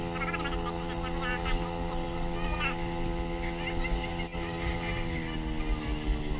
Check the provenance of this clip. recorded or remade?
recorded